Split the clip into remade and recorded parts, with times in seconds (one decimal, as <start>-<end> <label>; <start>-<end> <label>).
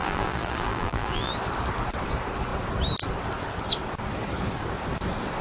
0.0-1.3 remade; 1.3-5.4 recorded